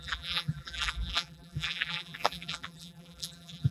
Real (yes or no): no